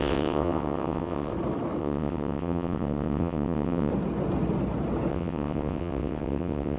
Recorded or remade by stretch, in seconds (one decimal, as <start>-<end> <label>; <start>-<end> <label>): 0.0-1.3 remade; 1.3-1.8 recorded; 1.8-3.9 remade; 3.9-5.1 recorded; 5.1-6.8 remade